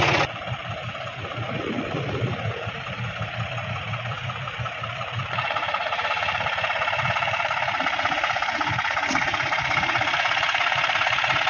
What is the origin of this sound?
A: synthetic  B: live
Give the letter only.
A